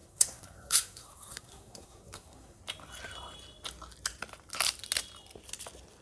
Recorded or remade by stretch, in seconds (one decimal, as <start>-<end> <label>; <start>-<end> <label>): 0.0-2.6 remade; 2.6-6.0 recorded